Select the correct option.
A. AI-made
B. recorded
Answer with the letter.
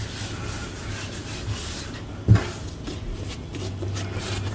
B